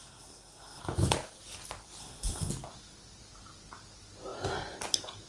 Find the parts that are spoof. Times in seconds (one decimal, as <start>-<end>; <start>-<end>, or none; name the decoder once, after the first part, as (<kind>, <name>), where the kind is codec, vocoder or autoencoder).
0.0-0.8 (codec, SNAC); 2.0-2.5